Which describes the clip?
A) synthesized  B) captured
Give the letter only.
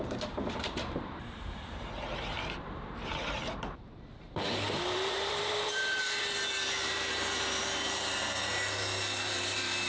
A